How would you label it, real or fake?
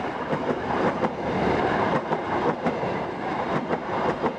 fake